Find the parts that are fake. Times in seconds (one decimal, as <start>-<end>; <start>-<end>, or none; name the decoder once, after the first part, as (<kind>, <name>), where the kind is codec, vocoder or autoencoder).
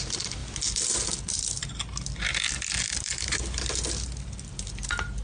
none